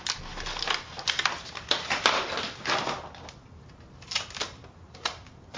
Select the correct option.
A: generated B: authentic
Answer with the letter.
B